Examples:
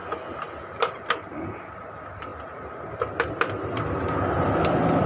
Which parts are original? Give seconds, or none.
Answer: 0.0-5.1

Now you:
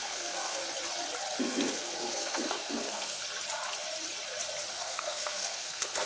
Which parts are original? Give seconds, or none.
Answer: 0.6-1.4; 3.2-4.7

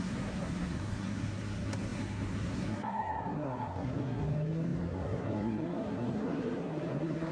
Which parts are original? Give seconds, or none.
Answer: none

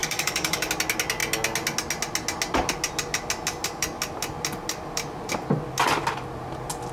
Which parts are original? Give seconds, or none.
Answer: 0.7-6.9

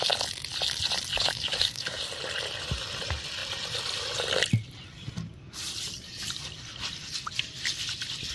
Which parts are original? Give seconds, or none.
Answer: 0.0-1.1; 2.0-8.3

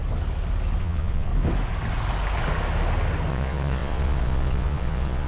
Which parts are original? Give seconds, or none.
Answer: 0.0-0.8; 1.3-3.3

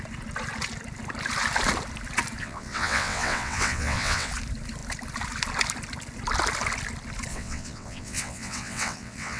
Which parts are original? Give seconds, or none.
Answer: 0.0-2.4; 4.3-7.3